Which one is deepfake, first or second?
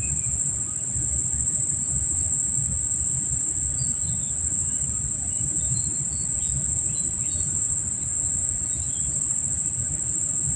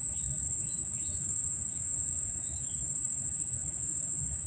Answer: second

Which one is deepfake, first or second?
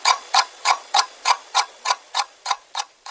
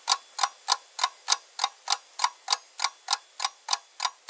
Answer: first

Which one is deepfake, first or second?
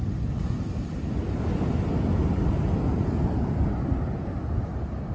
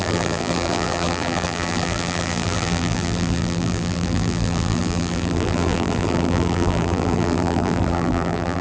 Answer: second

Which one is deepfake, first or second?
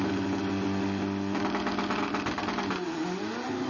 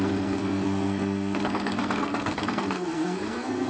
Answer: second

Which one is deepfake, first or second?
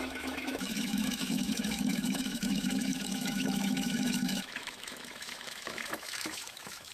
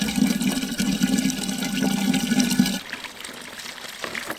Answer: first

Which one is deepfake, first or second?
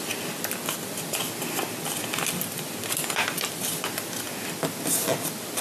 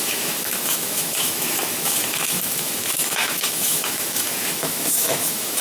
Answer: second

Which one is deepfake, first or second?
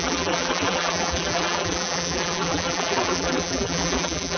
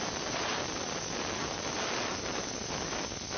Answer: first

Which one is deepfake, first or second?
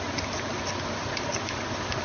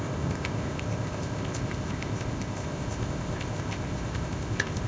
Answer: second